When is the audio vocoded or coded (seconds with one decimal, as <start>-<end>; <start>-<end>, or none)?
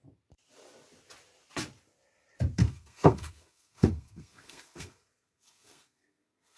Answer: 2.6-6.6